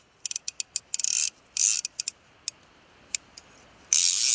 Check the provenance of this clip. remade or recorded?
recorded